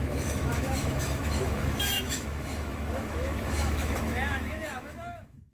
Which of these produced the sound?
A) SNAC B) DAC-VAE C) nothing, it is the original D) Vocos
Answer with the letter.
B